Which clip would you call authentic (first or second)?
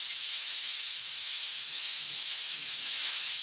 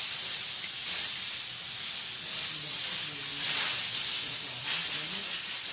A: second